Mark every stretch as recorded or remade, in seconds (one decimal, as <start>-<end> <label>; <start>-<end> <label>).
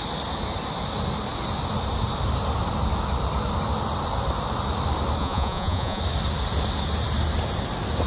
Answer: 0.0-5.2 recorded; 5.2-6.0 remade; 6.0-8.1 recorded